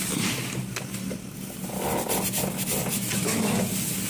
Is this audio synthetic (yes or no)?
no